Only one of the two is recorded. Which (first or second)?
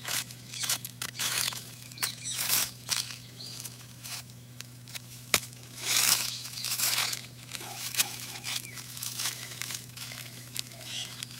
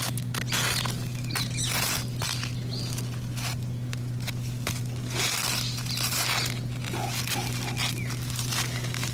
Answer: second